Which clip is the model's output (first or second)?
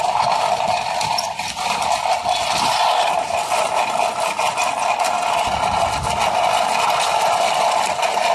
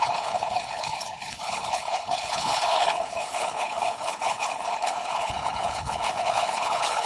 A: second